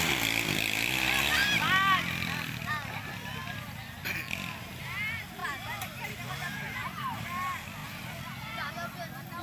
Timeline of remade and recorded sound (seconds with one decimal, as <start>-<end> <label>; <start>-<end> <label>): 0.0-9.4 recorded